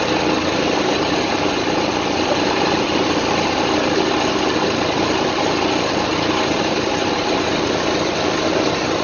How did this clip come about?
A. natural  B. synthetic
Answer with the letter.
A